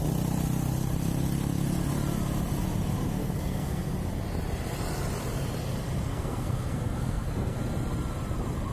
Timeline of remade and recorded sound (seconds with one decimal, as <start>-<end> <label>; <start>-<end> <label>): 0.0-3.2 recorded; 3.2-3.9 remade; 3.9-6.1 recorded; 6.1-7.6 remade; 7.6-8.7 recorded